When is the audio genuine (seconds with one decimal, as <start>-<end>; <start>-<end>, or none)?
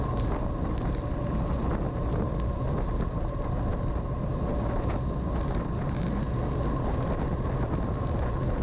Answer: 0.0-8.6